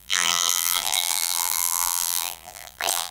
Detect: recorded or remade remade